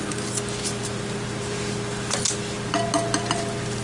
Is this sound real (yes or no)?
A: yes